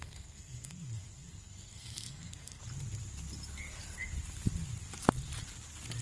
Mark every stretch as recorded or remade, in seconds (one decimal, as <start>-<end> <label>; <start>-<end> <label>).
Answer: 0.0-2.6 remade; 2.6-6.0 recorded